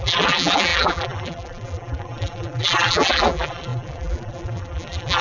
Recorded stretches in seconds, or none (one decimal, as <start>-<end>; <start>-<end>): none